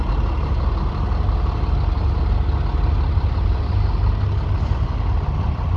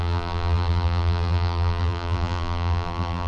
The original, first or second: first